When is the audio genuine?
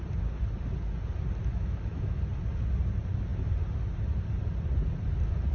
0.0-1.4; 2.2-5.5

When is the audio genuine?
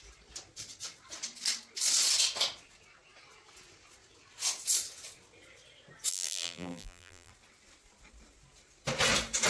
0.0-6.1; 7.3-9.5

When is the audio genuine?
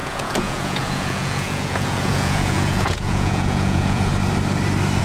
4.1-5.0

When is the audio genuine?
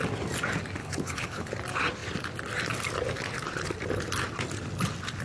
0.0-0.8; 1.5-5.2